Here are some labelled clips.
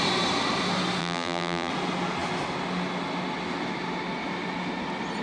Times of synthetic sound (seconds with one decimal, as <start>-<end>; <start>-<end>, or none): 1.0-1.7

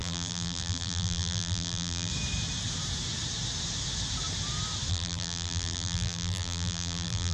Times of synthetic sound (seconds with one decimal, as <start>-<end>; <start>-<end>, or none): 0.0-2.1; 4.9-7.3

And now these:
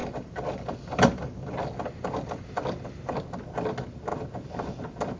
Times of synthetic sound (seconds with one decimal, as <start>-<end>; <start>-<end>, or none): 0.0-3.1